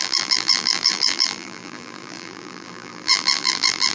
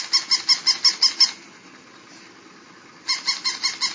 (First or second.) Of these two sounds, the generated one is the first